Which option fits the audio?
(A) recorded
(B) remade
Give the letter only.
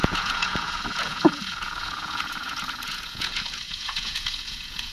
B